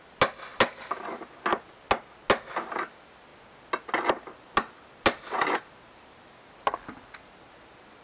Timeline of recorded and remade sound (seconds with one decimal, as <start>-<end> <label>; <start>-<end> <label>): 0.0-8.0 recorded